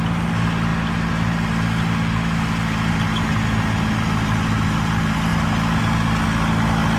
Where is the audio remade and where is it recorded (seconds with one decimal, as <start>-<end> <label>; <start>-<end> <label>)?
0.0-7.0 recorded